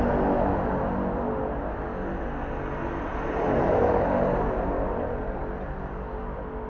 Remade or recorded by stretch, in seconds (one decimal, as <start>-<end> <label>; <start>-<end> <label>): 0.0-3.1 recorded; 3.1-5.4 remade; 5.4-6.7 recorded